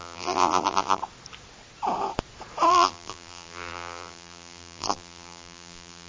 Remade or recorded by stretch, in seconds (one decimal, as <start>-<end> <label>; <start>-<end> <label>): 0.0-1.0 remade; 1.0-2.7 recorded; 2.7-6.1 remade